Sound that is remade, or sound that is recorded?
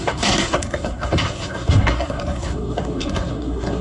remade